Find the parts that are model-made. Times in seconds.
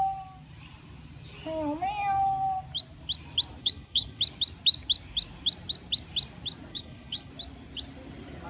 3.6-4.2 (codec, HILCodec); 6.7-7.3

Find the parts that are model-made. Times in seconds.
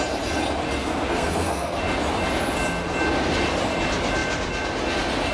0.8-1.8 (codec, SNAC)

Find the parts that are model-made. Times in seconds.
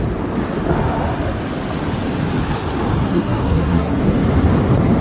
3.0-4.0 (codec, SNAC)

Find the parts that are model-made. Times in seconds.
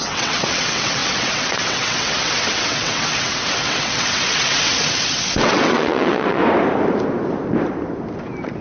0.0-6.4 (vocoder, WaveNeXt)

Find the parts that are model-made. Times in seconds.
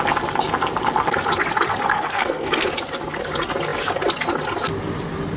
1.9-2.7 (codec, SNAC)